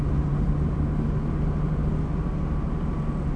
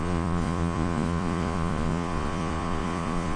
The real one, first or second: first